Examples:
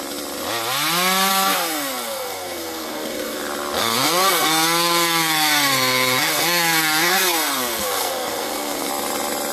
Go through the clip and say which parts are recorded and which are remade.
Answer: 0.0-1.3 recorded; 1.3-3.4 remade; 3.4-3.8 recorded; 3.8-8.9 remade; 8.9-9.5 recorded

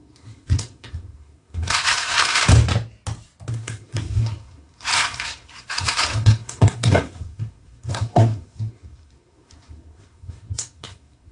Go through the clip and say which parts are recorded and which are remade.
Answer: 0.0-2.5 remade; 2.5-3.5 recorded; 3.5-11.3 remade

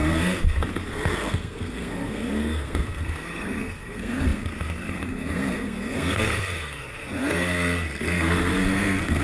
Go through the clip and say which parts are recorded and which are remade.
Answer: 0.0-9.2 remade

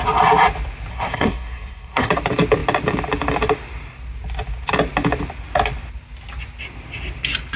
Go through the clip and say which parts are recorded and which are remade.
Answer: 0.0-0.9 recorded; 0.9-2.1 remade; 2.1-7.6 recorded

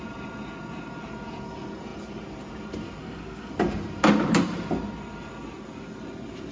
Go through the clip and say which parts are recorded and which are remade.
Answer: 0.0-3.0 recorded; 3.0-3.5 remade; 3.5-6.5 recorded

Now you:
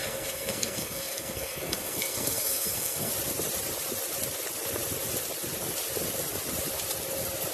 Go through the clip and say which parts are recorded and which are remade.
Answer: 0.0-3.1 remade; 3.1-7.5 recorded

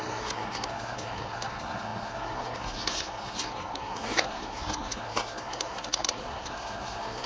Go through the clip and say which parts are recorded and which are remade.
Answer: 0.0-7.3 remade

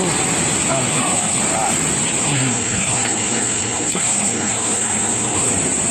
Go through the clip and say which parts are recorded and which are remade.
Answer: 0.0-0.9 recorded; 0.9-1.4 remade; 1.4-2.2 recorded; 2.2-5.5 remade; 5.5-5.9 recorded